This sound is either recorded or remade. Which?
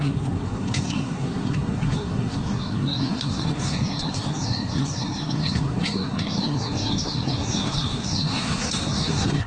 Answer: remade